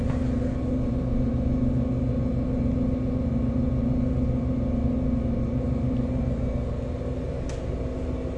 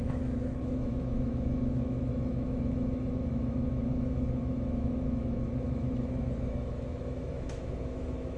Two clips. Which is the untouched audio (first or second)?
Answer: first